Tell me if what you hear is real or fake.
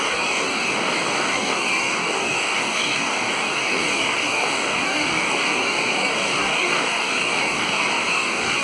fake